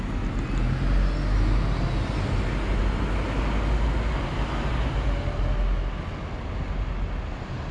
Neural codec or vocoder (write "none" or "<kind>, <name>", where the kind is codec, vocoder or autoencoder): none